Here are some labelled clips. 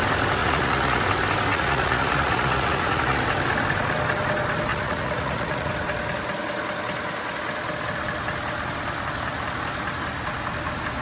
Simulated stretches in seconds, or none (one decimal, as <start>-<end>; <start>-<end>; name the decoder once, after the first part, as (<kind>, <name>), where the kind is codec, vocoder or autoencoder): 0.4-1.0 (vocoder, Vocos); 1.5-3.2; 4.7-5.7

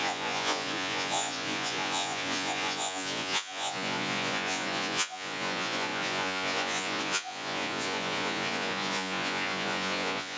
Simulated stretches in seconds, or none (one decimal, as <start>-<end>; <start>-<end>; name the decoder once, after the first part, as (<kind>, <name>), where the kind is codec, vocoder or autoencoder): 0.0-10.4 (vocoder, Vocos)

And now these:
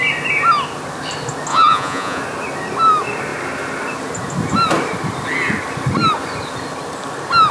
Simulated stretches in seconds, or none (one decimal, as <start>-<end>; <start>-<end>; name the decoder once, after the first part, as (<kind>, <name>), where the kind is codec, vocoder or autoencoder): 1.5-2.2 (vocoder, Vocos)